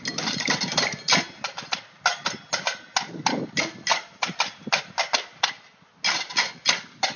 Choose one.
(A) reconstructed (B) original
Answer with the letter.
B